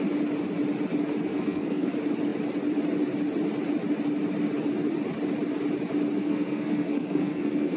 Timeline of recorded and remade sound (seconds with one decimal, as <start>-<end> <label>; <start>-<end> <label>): 0.0-1.3 recorded; 1.3-1.9 remade; 1.9-6.2 recorded; 6.2-7.8 remade